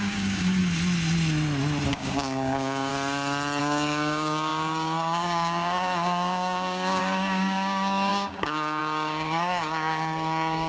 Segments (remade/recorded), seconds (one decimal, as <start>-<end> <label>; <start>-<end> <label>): 0.0-0.6 remade; 0.6-1.9 recorded; 1.9-2.9 remade; 2.9-3.6 recorded; 3.6-10.7 remade